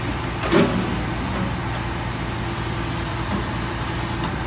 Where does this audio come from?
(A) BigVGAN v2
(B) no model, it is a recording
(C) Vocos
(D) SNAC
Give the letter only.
B